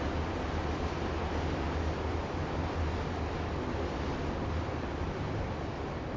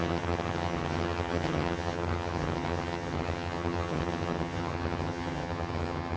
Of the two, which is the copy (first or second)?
second